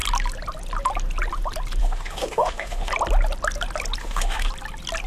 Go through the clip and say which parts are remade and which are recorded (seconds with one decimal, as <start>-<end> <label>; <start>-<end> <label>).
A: 0.0-1.8 recorded; 1.8-2.9 remade; 2.9-4.0 recorded; 4.0-4.5 remade; 4.5-5.1 recorded